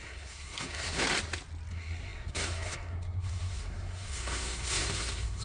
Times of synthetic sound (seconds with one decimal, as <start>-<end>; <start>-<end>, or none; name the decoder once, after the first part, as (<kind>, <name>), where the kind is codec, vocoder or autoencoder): 0.0-1.1 (codec, SNAC); 1.7-5.4